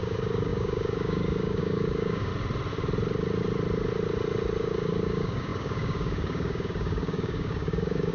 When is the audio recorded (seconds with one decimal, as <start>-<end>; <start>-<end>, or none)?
2.3-4.6